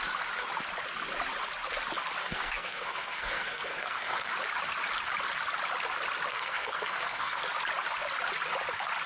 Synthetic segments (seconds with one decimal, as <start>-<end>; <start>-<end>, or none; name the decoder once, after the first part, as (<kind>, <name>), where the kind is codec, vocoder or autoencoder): 2.2-4.3 (codec, SNAC); 6.3-7.4